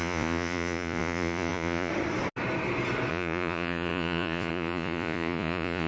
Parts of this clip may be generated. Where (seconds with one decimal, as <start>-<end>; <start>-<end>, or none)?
0.0-1.9; 3.1-5.9